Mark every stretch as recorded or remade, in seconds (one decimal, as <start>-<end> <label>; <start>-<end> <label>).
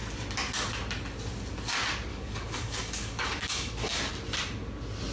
0.0-2.1 recorded; 2.1-4.1 remade; 4.1-5.1 recorded